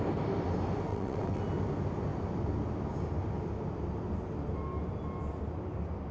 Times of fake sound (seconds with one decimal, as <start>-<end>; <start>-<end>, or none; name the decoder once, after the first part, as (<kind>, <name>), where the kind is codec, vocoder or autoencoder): 0.9-1.4 (vocoder, WaveNeXt)